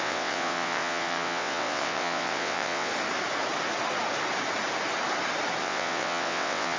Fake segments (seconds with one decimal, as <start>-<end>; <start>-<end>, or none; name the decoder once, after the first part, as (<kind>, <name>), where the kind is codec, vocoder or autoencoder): 0.0-2.9 (vocoder, WaveNeXt); 5.6-6.8